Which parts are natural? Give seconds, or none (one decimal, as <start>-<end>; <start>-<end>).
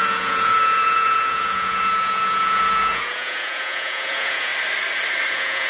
4.5-5.3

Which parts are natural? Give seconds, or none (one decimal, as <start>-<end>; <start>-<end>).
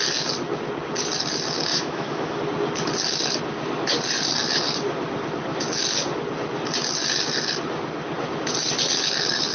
0.0-1.7; 2.4-9.5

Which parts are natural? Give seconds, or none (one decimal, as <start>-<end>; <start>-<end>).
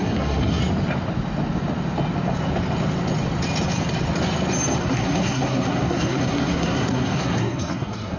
0.6-4.8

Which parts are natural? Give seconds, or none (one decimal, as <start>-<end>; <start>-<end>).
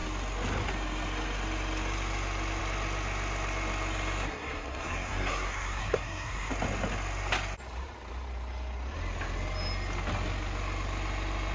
0.0-4.3; 6.5-11.5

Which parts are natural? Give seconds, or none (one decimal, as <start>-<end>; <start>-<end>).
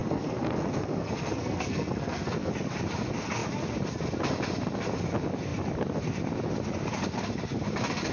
2.5-8.1